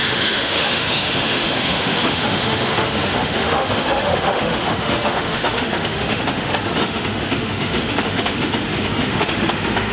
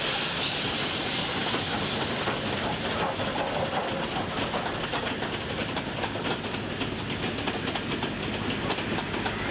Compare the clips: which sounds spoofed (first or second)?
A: first